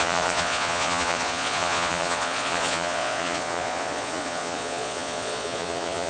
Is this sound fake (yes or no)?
yes